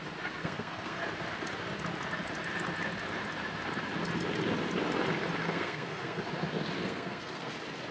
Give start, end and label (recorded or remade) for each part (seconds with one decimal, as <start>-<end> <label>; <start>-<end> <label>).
0.0-0.4 recorded; 0.4-1.0 remade; 1.0-5.4 recorded; 5.4-6.2 remade; 6.2-6.8 recorded; 6.8-7.5 remade; 7.5-7.9 recorded